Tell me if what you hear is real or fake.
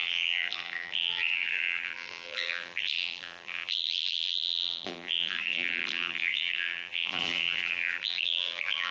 fake